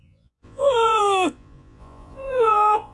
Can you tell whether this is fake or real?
fake